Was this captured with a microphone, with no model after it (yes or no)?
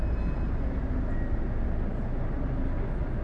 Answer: yes